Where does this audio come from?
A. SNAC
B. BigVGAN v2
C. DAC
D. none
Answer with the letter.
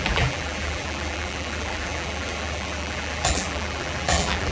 B